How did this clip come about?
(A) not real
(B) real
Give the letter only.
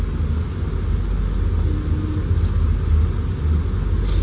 B